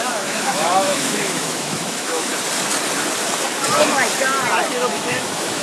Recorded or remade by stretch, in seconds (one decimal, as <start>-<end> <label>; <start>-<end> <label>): 0.0-2.3 remade; 2.3-4.7 recorded; 4.7-5.6 remade